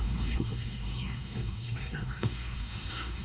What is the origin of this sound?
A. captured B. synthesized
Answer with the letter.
B